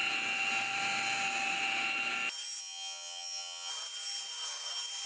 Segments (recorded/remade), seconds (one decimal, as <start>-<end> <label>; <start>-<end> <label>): 0.0-2.6 recorded; 2.6-3.7 remade; 3.7-5.1 recorded